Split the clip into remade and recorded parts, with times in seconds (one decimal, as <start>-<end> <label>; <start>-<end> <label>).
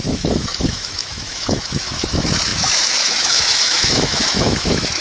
0.0-5.0 remade